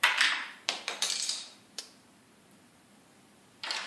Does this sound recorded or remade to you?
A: remade